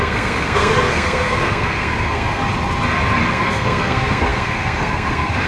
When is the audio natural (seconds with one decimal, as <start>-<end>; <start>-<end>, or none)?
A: 2.4-3.3